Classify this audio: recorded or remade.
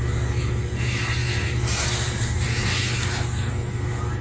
recorded